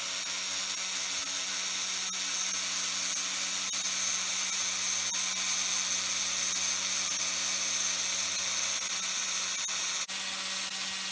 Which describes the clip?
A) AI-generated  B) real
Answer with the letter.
B